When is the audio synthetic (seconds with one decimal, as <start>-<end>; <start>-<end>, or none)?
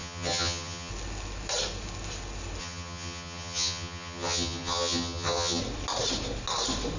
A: 0.0-0.9; 2.6-5.6